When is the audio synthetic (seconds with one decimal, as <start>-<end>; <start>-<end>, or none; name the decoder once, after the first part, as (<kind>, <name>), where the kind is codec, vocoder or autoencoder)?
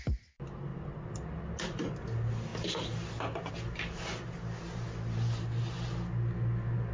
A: none